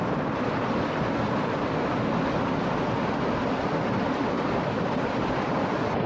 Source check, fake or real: real